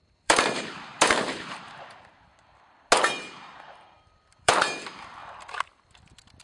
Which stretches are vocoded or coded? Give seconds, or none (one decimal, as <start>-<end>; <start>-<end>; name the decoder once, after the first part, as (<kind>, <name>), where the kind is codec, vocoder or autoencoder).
0.0-2.3 (vocoder, BigVGAN v2); 3.0-5.2